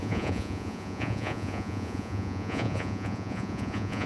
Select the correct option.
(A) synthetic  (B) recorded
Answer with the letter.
A